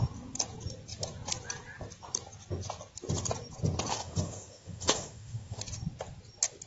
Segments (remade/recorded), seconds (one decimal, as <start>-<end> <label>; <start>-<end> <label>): 0.0-3.9 recorded; 3.9-5.6 remade; 5.6-6.7 recorded